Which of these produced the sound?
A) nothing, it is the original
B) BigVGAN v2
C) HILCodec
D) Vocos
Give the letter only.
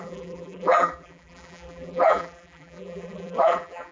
B